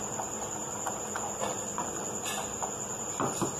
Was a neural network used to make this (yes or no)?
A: no